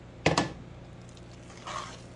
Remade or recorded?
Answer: recorded